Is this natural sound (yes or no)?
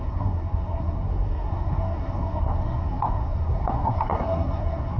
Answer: no